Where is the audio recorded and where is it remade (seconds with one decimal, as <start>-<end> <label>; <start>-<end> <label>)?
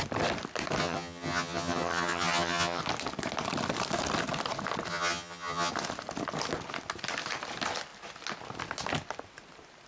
0.0-0.8 recorded; 0.8-2.8 remade; 2.8-4.9 recorded; 4.9-5.7 remade; 5.7-9.9 recorded